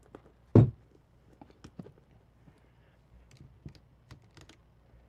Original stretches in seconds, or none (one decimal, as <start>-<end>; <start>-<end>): 0.0-5.1